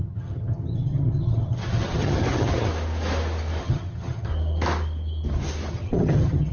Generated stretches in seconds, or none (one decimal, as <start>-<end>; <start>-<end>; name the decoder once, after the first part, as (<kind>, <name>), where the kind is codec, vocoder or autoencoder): 0.0-2.7 (vocoder, HiFi-GAN); 3.6-4.3; 5.7-6.5

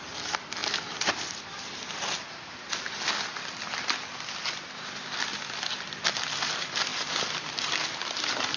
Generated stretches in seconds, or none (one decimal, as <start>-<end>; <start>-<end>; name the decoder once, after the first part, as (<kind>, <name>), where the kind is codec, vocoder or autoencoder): none